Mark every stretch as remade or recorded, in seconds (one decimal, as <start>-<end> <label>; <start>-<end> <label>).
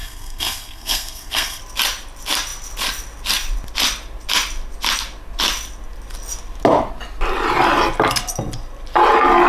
0.0-1.6 remade; 1.6-9.5 recorded